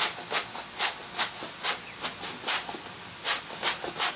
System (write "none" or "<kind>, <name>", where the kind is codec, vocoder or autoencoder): none